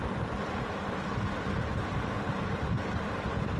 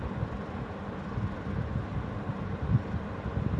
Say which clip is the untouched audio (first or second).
second